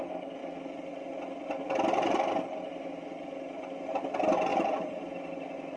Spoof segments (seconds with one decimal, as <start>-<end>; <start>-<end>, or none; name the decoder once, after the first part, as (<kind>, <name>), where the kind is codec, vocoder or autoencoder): 4.5-5.0 (vocoder, BigVGAN v2)

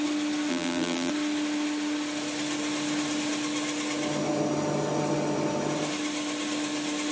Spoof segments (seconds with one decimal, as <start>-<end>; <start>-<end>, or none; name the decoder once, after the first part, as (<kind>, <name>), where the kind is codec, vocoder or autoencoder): 0.5-1.1 (vocoder, BigVGAN v2)

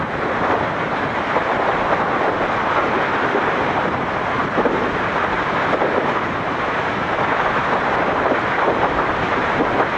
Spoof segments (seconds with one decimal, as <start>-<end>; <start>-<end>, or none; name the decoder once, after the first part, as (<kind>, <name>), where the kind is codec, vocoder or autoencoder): none

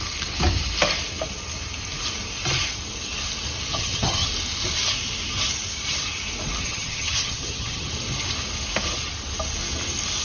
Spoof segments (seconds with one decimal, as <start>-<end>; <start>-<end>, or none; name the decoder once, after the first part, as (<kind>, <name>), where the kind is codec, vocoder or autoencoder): 3.7-4.3 (vocoder, HiFi-GAN); 6.6-7.9

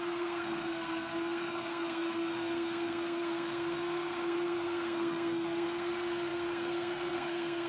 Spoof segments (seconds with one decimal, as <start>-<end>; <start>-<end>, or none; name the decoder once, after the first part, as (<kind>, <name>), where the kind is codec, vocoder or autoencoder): 0.0-7.7 (codec, SNAC)